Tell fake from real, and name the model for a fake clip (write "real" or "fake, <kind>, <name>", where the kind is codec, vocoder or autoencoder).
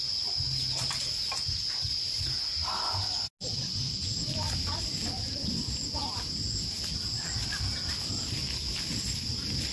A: real